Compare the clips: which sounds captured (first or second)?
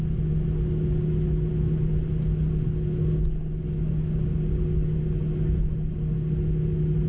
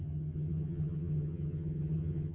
first